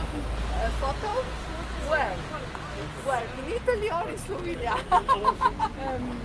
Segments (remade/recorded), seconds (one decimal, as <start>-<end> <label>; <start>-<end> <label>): 0.0-6.2 recorded

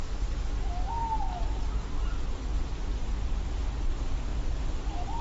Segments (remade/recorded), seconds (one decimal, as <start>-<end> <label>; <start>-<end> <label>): 0.0-5.2 recorded